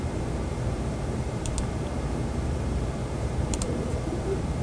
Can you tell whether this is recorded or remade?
remade